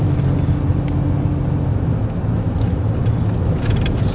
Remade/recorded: recorded